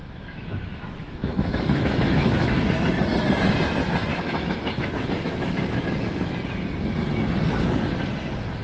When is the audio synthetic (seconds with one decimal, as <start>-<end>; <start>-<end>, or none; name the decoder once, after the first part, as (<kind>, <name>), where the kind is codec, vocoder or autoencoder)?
0.0-2.6 (autoencoder, DAC-VAE); 4.1-6.3